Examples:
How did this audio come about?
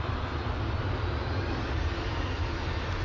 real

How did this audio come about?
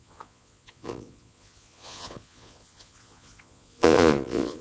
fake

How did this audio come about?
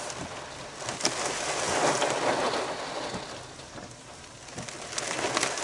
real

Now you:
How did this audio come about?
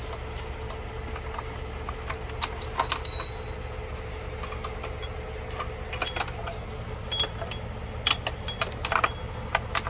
real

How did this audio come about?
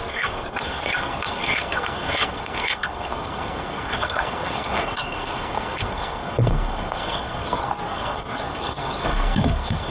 fake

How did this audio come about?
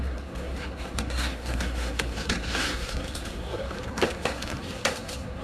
fake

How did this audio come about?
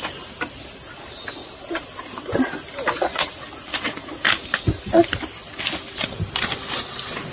real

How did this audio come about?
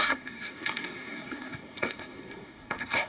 fake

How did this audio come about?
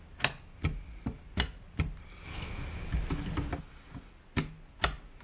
real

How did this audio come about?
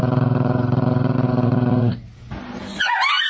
real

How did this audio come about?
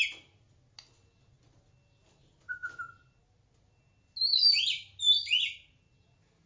real